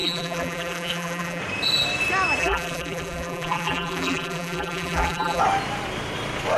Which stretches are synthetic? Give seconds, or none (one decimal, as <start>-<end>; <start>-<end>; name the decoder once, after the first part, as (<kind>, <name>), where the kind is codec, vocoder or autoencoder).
0.0-1.4 (vocoder, BigVGAN v2); 2.4-5.4